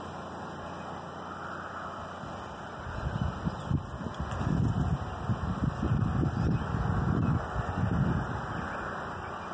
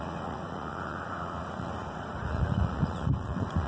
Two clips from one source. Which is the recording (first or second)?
first